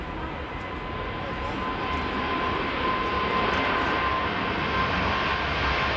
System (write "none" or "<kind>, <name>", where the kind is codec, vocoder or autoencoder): none